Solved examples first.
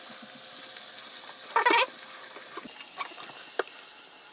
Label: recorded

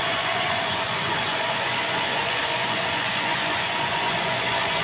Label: remade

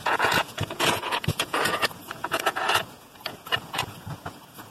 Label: remade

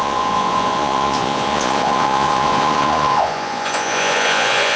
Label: remade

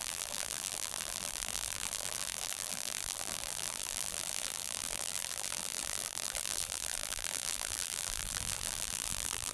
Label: remade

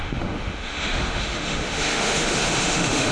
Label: remade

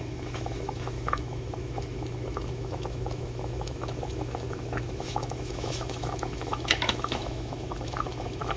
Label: remade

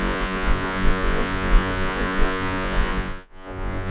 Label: remade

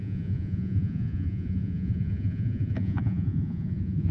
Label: remade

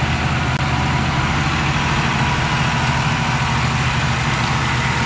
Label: recorded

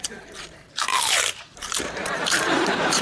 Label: remade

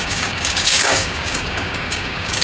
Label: remade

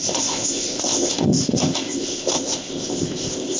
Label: remade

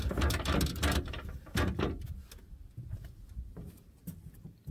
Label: recorded